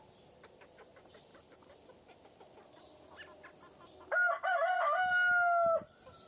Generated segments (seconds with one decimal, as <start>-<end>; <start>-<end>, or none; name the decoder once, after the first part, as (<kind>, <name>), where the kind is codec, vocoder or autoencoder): none